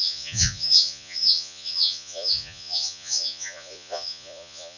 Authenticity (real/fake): fake